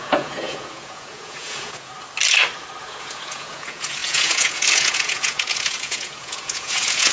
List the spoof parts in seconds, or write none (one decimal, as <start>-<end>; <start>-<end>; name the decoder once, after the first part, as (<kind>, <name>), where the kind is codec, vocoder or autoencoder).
0.0-1.9 (vocoder, Vocos); 2.8-7.1

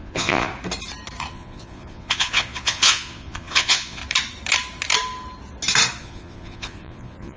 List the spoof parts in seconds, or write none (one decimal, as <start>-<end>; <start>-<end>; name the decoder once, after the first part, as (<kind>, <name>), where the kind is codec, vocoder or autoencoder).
0.0-0.5 (vocoder, Vocos); 1.3-4.0; 6.0-7.4